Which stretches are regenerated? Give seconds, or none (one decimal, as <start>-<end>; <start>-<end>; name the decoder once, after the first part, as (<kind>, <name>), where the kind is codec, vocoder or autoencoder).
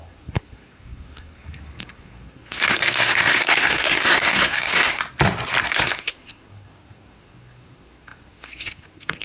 0.0-5.0 (codec, SNAC); 5.6-9.2